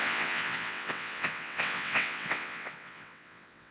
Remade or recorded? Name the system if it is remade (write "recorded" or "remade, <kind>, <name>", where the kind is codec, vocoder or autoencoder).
remade, vocoder, WaveNeXt